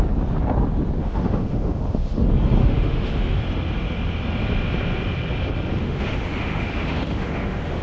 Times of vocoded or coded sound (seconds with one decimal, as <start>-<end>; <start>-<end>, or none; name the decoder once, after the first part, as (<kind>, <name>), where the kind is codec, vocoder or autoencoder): 1.0-2.2 (autoencoder, DAC-VAE); 2.6-3.4; 5.8-7.8